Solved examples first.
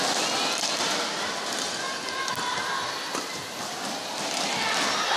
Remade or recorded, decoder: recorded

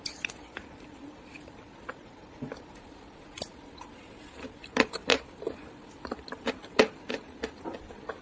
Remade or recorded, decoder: remade, vocoder, BigVGAN v2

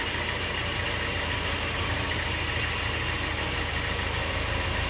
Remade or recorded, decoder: recorded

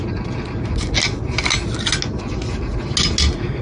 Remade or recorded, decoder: recorded